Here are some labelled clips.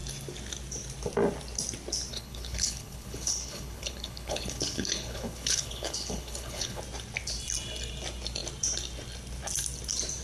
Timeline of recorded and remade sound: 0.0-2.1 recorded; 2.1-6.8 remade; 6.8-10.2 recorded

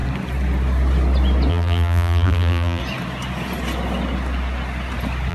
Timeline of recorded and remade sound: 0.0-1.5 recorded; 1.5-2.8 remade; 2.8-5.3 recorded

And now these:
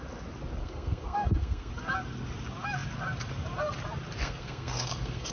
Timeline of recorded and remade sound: 0.0-0.6 recorded; 0.6-1.7 remade; 1.7-4.2 recorded; 4.2-5.3 remade

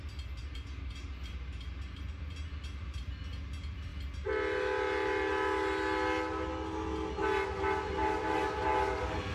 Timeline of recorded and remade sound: 0.0-0.4 recorded; 0.4-2.0 remade; 2.0-9.3 recorded

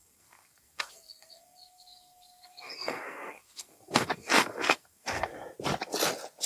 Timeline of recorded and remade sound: 0.0-5.3 remade; 5.3-6.5 recorded